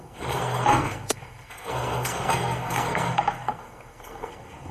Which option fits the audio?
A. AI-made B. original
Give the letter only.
A